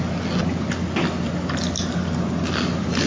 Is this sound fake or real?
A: real